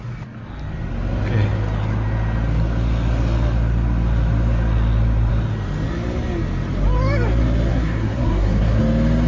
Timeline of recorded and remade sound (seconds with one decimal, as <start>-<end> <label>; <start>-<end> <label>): 0.0-7.7 recorded; 7.7-8.8 remade; 8.8-9.3 recorded